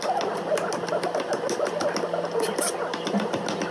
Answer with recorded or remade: recorded